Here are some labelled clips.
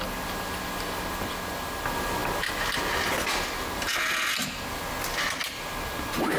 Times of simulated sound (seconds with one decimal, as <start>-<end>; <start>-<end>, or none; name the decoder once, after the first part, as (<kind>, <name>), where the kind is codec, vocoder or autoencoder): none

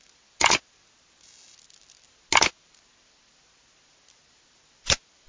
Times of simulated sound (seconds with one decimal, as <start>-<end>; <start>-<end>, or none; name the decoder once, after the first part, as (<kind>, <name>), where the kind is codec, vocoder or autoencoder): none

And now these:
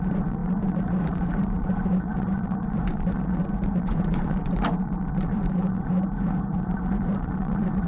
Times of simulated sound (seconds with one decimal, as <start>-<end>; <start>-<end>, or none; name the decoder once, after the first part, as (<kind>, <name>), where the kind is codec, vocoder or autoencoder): 0.0-7.9 (vocoder, Vocos)

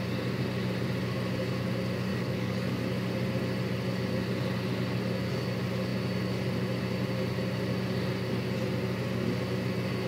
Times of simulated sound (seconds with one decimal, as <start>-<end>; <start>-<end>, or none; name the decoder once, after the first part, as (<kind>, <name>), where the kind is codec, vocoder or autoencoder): 2.1-2.8 (codec, DAC)

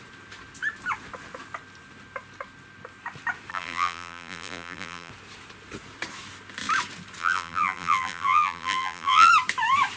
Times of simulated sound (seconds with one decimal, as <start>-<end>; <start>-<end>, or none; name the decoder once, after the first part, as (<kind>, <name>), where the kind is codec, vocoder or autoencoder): 3.5-5.1 (vocoder, BigVGAN v2); 7.2-9.3

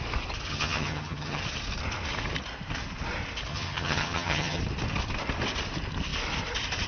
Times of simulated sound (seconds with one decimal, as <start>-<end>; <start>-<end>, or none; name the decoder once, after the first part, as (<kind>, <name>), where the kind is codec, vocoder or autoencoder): 0.5-1.4 (vocoder, HiFi-GAN); 3.5-4.6

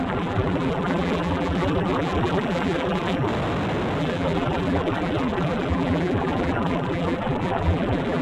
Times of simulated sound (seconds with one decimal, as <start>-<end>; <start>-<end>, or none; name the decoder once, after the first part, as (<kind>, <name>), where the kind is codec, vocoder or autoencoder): 0.0-3.3 (vocoder, BigVGAN v2); 4.0-8.2

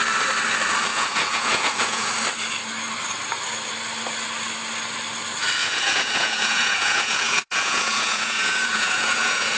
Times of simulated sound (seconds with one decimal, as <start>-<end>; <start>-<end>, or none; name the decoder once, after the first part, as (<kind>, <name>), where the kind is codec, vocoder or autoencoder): 0.9-2.1 (vocoder, Vocos); 5.6-9.6